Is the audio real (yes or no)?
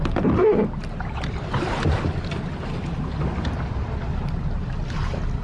yes